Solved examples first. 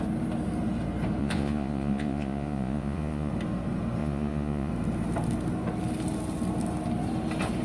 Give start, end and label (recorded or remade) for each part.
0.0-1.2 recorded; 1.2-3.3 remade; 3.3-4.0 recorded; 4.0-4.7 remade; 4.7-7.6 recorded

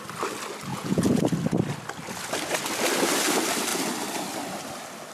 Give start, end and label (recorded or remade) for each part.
0.0-0.7 recorded; 0.7-1.2 remade; 1.2-5.1 recorded

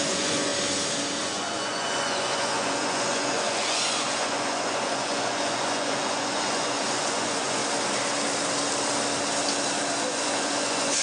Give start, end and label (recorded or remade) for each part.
0.0-0.5 remade; 0.5-1.2 recorded; 1.2-7.6 remade; 7.6-10.1 recorded; 10.1-11.0 remade

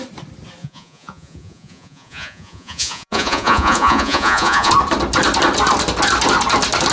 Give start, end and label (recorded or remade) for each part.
0.0-0.6 recorded; 0.6-4.7 remade; 4.7-6.9 recorded

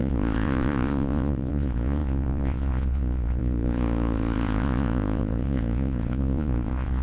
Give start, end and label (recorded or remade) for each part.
0.0-7.0 remade

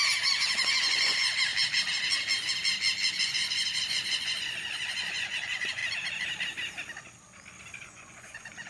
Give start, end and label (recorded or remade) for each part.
0.0-1.5 remade; 1.5-3.2 recorded; 3.2-5.8 remade; 5.8-7.8 recorded; 7.8-8.7 remade